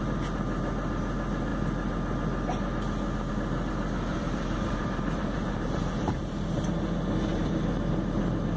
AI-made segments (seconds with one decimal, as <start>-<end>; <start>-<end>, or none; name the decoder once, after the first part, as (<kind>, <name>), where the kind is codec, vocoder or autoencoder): 4.1-6.6 (vocoder, BigVGAN v2); 7.3-8.2